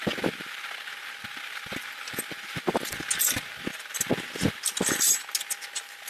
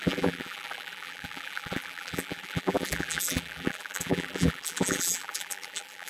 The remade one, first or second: second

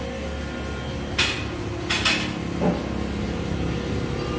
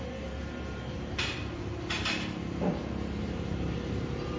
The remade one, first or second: second